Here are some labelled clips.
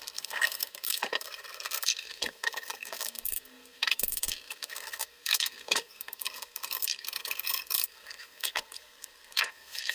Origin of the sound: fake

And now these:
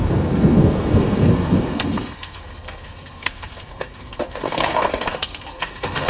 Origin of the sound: fake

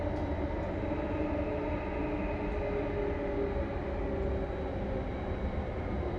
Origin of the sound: real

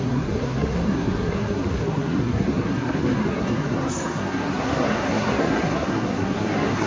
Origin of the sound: fake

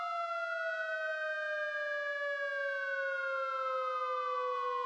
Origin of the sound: real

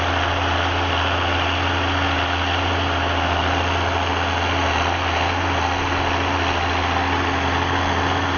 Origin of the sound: real